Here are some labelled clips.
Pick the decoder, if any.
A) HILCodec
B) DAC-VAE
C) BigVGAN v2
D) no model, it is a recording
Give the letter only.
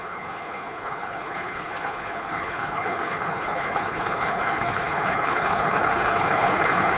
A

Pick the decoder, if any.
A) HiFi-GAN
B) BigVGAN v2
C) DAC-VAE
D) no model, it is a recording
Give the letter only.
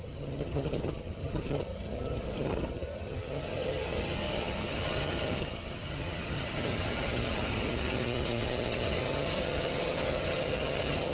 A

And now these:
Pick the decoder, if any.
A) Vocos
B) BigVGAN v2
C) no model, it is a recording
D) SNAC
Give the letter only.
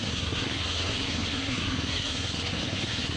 D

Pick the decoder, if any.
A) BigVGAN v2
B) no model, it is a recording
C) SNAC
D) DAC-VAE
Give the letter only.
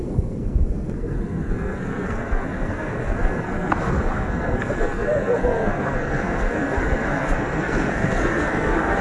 C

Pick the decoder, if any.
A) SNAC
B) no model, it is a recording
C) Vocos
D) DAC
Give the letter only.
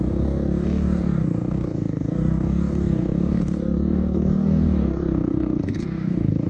D